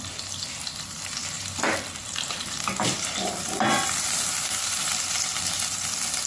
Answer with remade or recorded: remade